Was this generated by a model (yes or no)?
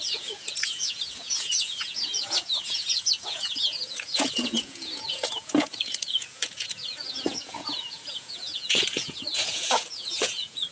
yes